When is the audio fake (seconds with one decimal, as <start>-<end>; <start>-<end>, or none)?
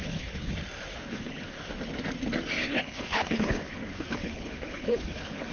0.0-0.5; 0.9-1.7; 2.6-5.5